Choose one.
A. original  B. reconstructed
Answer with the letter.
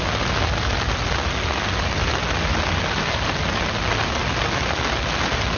A